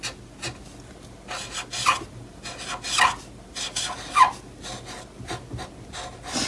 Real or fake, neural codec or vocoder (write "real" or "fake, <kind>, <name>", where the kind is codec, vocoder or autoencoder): real